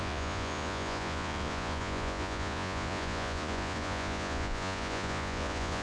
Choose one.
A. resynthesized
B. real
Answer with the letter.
A